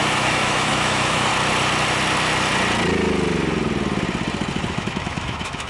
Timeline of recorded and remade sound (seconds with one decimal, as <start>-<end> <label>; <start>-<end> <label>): 0.0-1.3 remade; 1.3-4.7 recorded; 4.7-5.7 remade

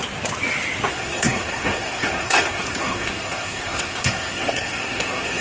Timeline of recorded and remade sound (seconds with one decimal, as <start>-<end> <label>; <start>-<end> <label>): 0.0-0.9 recorded; 0.9-5.4 remade

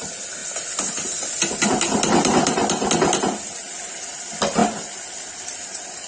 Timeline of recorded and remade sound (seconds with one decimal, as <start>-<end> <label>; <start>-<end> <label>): 0.0-6.1 recorded

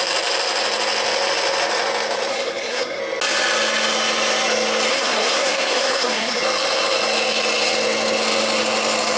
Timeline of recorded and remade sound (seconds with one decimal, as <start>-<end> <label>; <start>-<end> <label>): 0.0-2.3 recorded; 2.3-3.0 remade; 3.0-4.9 recorded; 4.9-6.4 remade; 6.4-9.2 recorded

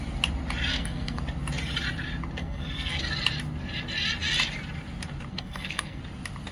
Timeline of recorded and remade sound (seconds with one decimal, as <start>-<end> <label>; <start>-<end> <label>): 0.0-0.7 recorded; 0.7-1.2 remade; 1.2-2.4 recorded; 2.4-3.0 remade; 3.0-5.3 recorded; 5.3-6.0 remade; 6.0-6.5 recorded

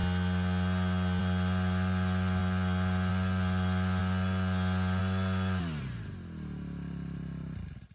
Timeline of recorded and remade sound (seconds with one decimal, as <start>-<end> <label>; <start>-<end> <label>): 0.0-1.2 recorded; 1.2-2.4 remade; 2.4-3.1 recorded; 3.1-4.0 remade; 4.0-5.0 recorded; 5.0-7.9 remade

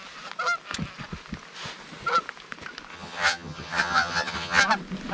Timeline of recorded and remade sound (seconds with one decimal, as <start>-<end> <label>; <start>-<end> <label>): 0.0-2.9 recorded; 2.9-4.6 remade; 4.6-5.1 recorded

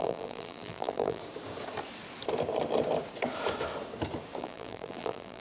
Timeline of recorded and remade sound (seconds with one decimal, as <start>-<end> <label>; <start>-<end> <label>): 0.0-1.2 remade; 1.2-4.4 recorded; 4.4-5.4 remade